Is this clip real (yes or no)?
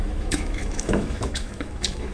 no